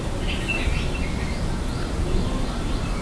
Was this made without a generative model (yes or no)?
yes